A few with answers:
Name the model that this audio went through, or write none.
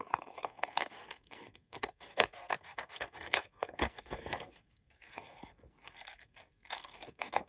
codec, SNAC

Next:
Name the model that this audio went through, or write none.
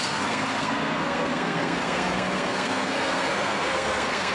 codec, SNAC